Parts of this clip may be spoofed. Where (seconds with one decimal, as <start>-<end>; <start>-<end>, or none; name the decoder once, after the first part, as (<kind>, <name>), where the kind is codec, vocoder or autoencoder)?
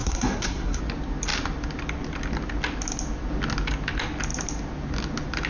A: 0.0-0.8 (codec, SNAC)